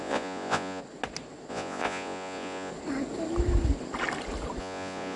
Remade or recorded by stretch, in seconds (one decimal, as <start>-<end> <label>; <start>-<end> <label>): 0.0-0.8 remade; 0.8-1.5 recorded; 1.5-2.7 remade; 2.7-4.6 recorded; 4.6-5.2 remade